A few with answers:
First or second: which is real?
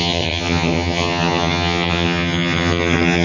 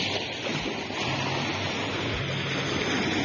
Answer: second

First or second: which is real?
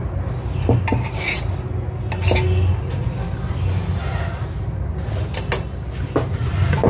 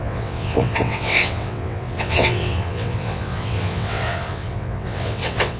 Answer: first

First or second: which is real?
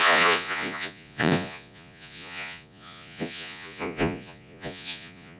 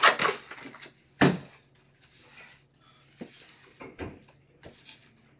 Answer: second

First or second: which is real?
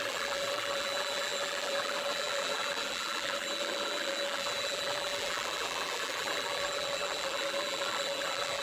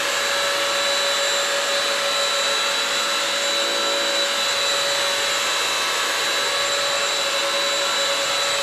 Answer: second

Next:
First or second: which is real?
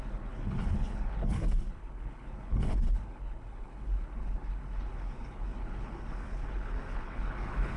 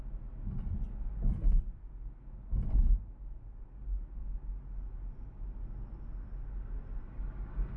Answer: second